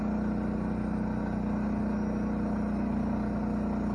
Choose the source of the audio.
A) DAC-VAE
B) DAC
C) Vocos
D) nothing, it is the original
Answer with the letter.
D